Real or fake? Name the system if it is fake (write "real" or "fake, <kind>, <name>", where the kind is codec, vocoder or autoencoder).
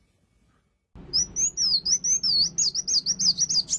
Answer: real